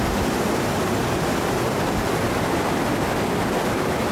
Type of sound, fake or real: real